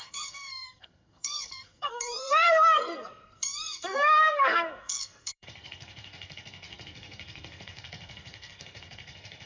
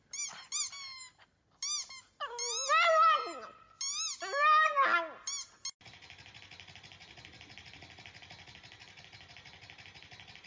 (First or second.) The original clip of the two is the second